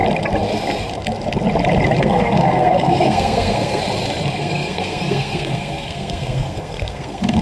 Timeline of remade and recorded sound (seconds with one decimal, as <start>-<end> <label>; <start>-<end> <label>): 0.0-2.0 recorded; 2.0-3.8 remade; 3.8-4.4 recorded; 4.4-7.4 remade